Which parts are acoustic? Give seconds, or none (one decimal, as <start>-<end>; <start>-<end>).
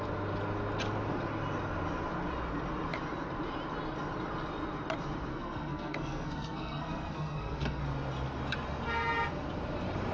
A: 0.0-5.3; 7.8-10.1